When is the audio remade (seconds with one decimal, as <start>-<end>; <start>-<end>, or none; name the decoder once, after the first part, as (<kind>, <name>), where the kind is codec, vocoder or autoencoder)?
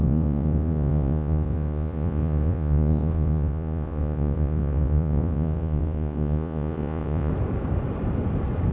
0.0-7.3 (vocoder, Vocos)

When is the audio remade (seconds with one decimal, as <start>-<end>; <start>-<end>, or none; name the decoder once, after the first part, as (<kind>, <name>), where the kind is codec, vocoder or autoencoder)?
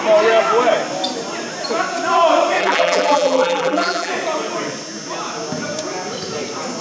2.6-4.1 (vocoder, BigVGAN v2)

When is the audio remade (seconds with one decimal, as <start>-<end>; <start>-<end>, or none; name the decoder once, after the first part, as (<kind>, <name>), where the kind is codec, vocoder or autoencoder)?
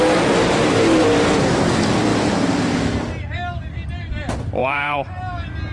4.6-5.2 (vocoder, BigVGAN v2)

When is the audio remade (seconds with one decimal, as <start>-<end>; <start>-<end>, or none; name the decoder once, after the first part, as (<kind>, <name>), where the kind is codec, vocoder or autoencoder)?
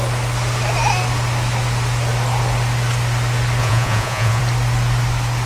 3.6-4.4 (vocoder, Vocos)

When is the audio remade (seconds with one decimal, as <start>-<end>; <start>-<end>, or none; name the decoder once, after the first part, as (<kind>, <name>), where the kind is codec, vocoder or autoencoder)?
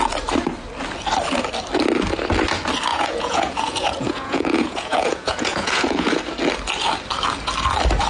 2.9-6.1 (vocoder, Vocos)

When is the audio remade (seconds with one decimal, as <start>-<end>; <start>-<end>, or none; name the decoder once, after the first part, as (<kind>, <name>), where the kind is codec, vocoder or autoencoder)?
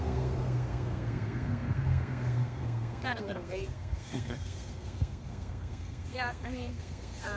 0.0-7.4 (codec, SNAC)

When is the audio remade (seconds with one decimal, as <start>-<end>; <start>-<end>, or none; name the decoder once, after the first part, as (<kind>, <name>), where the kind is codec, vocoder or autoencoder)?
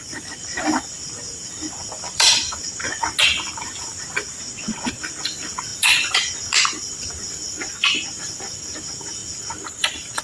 0.0-2.3 (vocoder, BigVGAN v2); 5.2-10.2